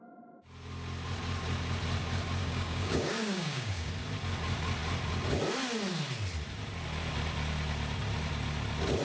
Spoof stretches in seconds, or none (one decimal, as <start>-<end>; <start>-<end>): 2.4-3.9